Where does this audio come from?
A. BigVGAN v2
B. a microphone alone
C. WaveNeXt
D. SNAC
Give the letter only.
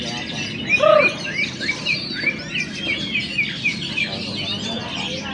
B